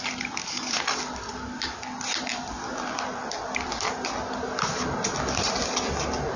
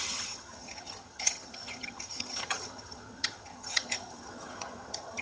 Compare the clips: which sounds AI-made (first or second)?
second